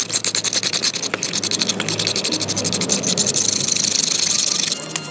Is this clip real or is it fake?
real